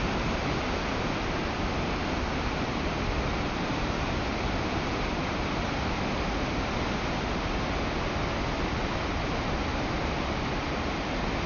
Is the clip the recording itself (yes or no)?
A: yes